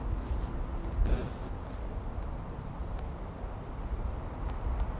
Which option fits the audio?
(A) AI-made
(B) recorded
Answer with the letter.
B